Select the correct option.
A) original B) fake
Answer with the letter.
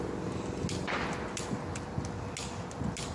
A